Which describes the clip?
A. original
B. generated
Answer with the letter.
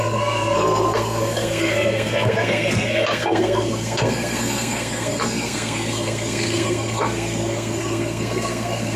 B